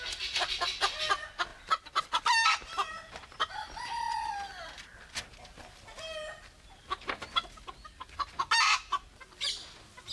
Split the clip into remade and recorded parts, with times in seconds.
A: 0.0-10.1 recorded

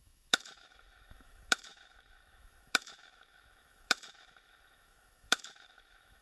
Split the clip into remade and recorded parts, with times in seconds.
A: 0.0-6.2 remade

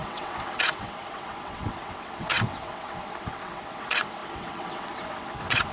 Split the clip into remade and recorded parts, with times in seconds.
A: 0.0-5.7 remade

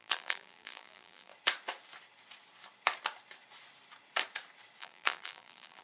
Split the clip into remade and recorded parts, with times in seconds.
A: 0.0-1.3 remade; 1.3-4.8 recorded; 4.8-5.8 remade